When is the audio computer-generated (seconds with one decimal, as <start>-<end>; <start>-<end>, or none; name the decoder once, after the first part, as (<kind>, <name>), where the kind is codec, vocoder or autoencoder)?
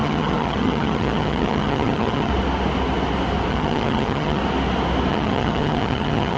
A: 0.0-2.3 (vocoder, HiFi-GAN); 3.5-4.4; 5.1-6.4